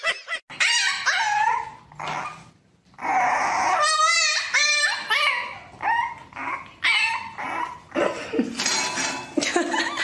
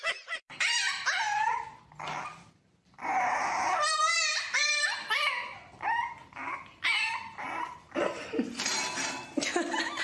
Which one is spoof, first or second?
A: second